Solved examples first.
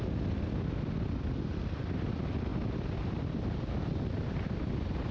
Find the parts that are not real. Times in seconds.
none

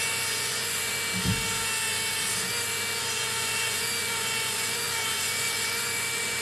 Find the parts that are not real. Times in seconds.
0.0-0.9 (vocoder, Vocos); 3.0-6.4